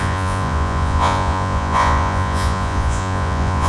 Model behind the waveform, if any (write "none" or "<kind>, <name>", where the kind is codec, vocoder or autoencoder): vocoder, Vocos